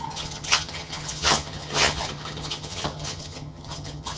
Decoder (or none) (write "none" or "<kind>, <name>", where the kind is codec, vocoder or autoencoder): vocoder, HiFi-GAN